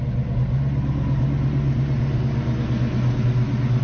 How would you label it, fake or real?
real